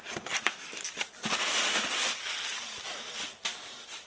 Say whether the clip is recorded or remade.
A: recorded